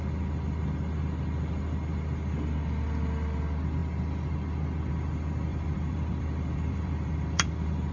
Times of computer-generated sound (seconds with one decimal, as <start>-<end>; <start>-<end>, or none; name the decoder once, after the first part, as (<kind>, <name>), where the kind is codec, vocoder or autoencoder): 5.5-7.9 (vocoder, BigVGAN v2)